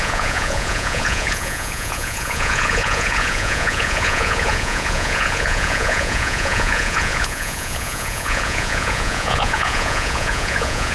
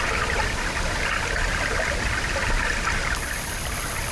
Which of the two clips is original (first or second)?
second